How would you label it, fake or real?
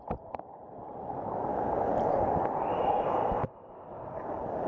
real